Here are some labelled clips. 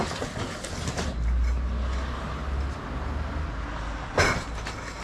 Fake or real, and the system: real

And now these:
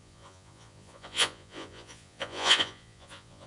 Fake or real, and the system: fake, vocoder, Vocos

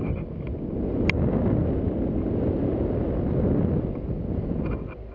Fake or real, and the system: real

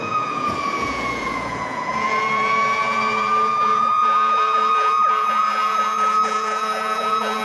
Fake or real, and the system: fake, vocoder, Vocos